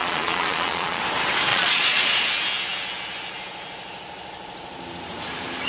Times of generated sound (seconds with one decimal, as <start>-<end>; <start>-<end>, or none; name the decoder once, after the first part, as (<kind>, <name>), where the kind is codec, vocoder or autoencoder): 0.0-1.0 (vocoder, Vocos); 1.5-2.3